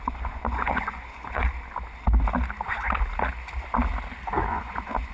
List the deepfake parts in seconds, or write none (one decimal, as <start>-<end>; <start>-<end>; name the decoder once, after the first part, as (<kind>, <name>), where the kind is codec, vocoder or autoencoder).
0.0-1.4 (vocoder, Vocos); 4.5-5.1